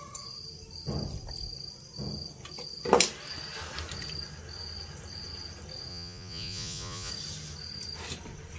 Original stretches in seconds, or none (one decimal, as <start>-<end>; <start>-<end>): 0.0-5.9; 7.1-8.6

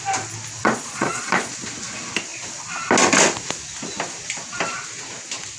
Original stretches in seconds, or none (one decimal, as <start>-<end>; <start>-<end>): 0.0-0.6; 1.5-5.6

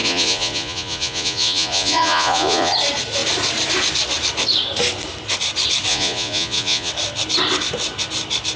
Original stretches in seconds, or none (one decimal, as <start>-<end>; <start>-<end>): 2.7-5.9; 6.9-8.6

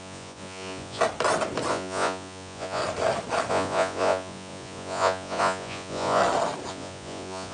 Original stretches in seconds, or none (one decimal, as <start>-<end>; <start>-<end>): 1.0-1.7; 2.8-3.5; 6.2-6.7

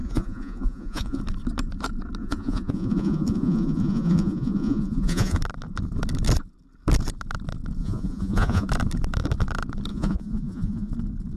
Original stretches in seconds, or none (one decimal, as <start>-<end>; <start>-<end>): 1.2-2.2; 5.4-7.8; 8.7-9.9; 10.9-11.4

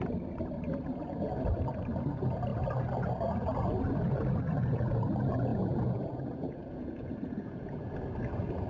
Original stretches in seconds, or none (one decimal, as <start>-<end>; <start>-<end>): 0.0-5.5; 7.9-8.7